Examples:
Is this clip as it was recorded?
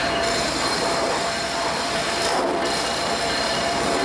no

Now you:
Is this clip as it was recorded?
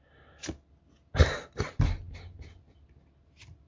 yes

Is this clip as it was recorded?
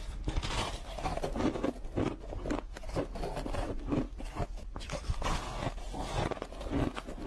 yes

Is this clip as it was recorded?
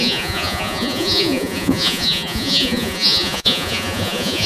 no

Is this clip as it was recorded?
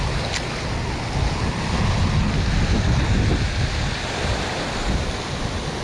yes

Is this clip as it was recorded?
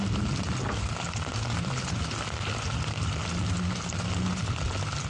yes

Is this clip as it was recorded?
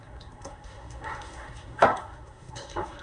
no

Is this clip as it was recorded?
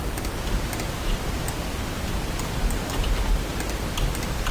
no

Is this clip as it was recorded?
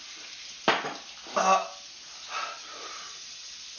yes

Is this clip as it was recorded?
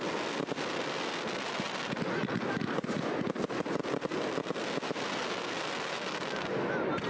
yes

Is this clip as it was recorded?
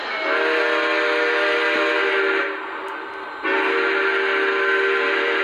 yes